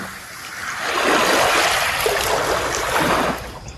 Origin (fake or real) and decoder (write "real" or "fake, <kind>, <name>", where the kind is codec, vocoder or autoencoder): real